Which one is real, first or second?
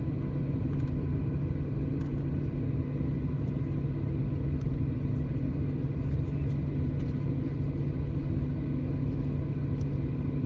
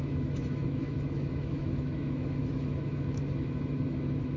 first